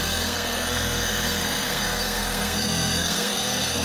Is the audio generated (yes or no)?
yes